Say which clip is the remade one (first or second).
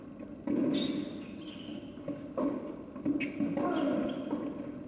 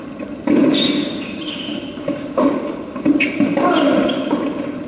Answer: second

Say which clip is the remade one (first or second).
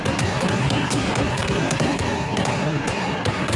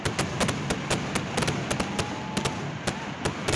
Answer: first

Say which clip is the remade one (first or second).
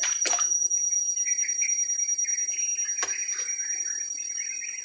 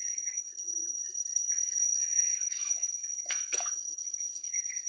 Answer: second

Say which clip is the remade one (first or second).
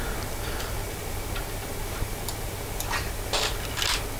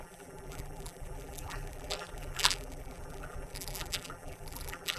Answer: second